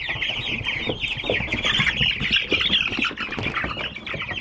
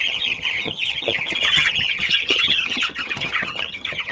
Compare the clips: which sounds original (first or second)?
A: first